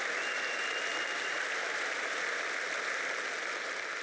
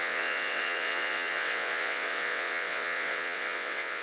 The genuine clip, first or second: first